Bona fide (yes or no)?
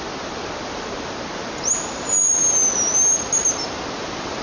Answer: yes